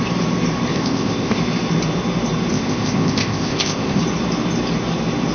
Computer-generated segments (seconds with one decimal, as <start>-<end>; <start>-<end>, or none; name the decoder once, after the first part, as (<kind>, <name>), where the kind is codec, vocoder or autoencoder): 0.7-1.4 (codec, ZipCodec); 2.5-4.0